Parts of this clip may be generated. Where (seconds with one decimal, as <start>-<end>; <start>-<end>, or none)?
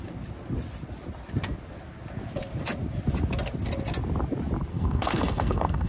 4.7-5.9